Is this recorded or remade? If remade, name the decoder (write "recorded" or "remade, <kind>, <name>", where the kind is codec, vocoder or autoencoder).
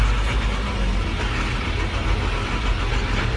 recorded